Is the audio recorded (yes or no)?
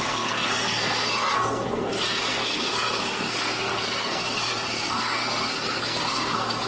no